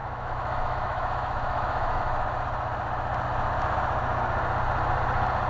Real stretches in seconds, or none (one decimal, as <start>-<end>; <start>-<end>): 2.0-5.5